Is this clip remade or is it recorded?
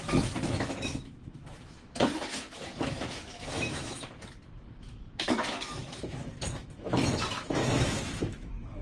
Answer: remade